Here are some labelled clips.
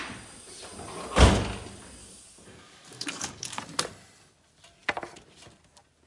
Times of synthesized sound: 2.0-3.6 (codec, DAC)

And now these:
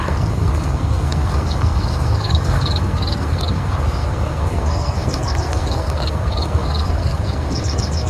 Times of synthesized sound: 0.0-8.1 (codec, SNAC)

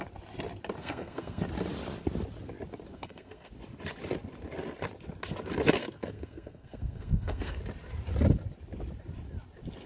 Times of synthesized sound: 0.8-1.4 (codec, SNAC); 2.9-3.5; 5.8-7.6

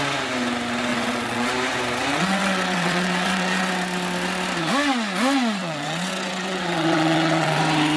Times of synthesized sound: 0.9-1.5 (vocoder, WaveNeXt); 2.1-3.7; 5.6-7.6